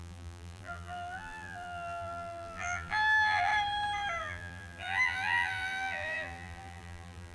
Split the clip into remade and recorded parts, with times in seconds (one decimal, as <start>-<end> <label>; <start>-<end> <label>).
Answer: 0.0-3.5 remade; 3.5-4.2 recorded; 4.2-7.3 remade